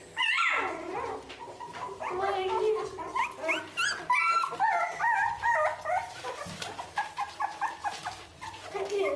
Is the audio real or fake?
real